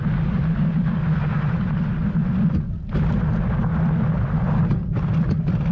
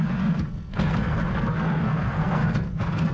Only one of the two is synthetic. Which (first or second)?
second